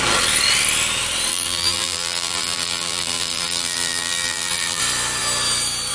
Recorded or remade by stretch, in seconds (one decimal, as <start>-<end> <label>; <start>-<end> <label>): 0.0-1.3 recorded; 1.3-4.8 remade; 4.8-5.9 recorded